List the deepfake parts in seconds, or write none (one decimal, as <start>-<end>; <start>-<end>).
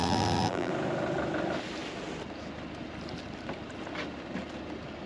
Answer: 0.0-0.7